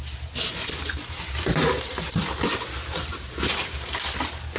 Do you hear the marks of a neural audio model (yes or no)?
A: no